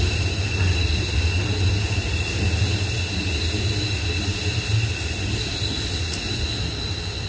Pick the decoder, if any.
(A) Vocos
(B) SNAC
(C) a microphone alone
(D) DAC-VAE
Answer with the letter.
C